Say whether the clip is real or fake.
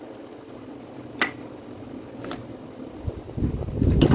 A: real